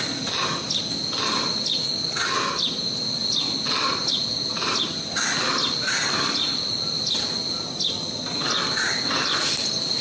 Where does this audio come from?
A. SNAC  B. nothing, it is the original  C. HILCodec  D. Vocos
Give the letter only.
B